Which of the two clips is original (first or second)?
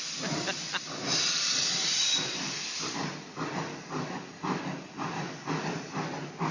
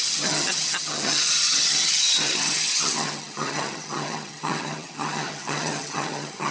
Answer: first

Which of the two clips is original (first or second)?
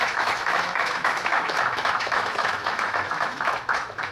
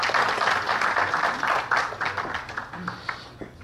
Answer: second